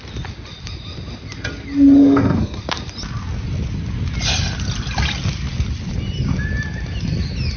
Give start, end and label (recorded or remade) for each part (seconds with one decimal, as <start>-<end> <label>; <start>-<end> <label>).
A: 0.0-2.0 recorded; 2.0-2.6 remade; 2.6-7.6 recorded